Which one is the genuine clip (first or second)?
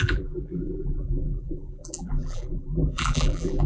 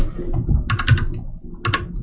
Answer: second